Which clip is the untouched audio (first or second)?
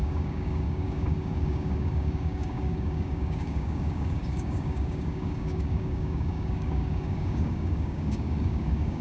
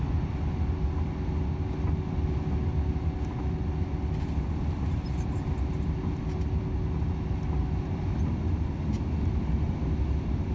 second